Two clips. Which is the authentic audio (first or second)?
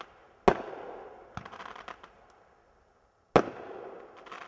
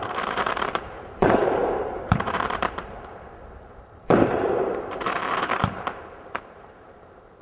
first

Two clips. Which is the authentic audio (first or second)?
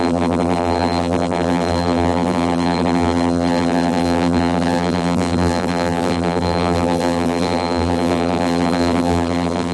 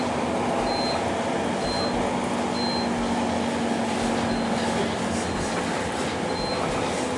second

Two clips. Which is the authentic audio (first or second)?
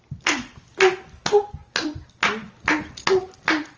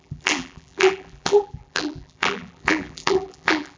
first